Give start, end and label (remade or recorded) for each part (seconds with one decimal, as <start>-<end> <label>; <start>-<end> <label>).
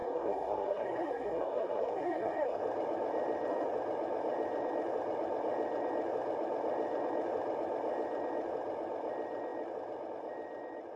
0.0-2.6 remade; 2.6-11.0 recorded